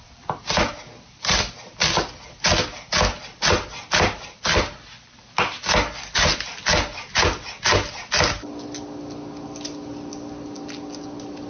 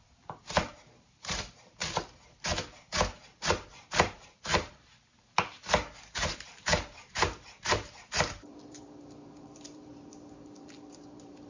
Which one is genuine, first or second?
first